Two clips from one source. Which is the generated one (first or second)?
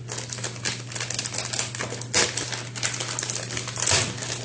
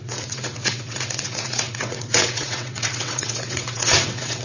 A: second